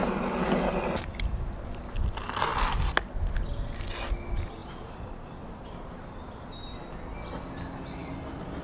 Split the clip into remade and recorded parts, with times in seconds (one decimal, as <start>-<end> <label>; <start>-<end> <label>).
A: 0.0-8.6 recorded

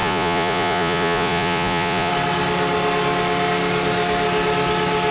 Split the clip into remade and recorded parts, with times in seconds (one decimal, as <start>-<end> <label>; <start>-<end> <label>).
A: 0.0-2.1 remade; 2.1-5.1 recorded

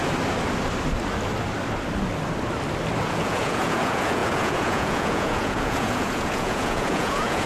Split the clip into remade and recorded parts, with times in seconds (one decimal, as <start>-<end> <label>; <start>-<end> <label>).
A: 0.0-3.0 recorded; 3.0-7.5 remade

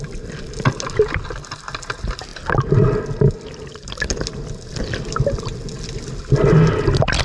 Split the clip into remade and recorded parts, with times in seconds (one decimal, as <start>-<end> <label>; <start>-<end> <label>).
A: 0.0-7.2 recorded

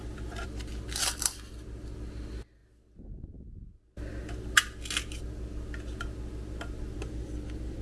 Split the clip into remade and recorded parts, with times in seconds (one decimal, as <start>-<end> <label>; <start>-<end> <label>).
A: 0.0-7.8 recorded

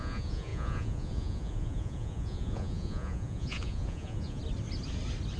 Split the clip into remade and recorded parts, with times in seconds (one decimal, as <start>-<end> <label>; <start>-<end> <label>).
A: 0.0-4.4 remade; 4.4-5.4 recorded